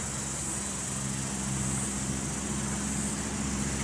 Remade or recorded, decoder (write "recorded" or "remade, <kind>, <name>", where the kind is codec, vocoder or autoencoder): recorded